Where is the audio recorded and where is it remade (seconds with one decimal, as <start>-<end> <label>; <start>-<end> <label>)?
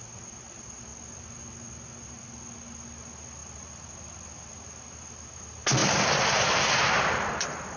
0.0-7.8 recorded